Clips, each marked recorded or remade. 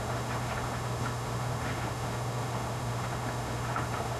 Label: remade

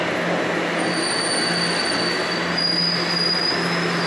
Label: recorded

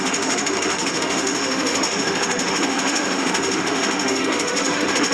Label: remade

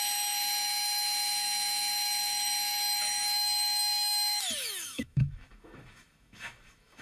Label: remade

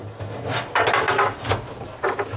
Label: recorded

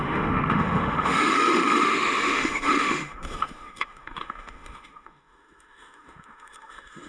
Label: remade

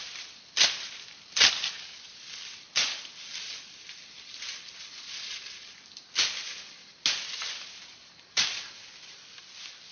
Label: recorded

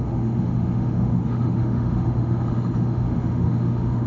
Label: remade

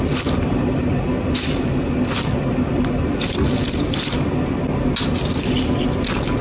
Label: recorded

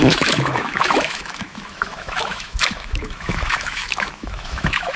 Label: remade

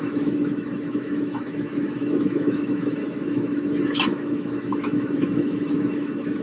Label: remade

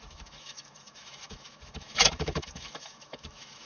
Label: remade